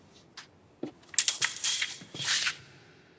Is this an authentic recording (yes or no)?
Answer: yes